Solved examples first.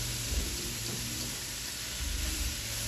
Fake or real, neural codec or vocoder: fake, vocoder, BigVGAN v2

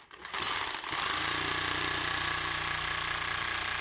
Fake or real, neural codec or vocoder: fake, vocoder, BigVGAN v2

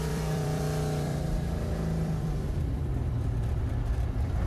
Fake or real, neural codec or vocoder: fake, vocoder, BigVGAN v2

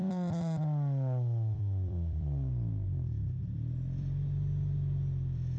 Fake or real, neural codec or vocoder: fake, vocoder, BigVGAN v2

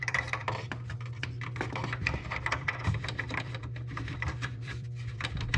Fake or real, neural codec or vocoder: fake, vocoder, BigVGAN v2